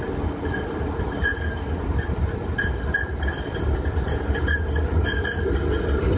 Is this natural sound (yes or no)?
yes